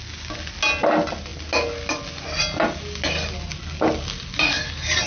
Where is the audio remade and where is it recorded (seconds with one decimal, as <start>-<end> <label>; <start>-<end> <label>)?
0.0-5.1 recorded